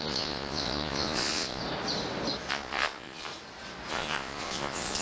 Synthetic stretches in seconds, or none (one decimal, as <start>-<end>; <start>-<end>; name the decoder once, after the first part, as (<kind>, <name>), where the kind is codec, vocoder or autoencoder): 0.0-1.6 (vocoder, Vocos); 2.5-3.3; 3.9-5.0